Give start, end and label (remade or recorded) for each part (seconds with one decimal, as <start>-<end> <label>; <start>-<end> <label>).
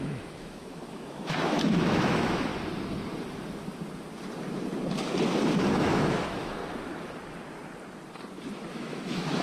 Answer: 0.0-2.5 remade; 2.5-5.7 recorded; 5.7-6.6 remade; 6.6-8.7 recorded; 8.7-9.4 remade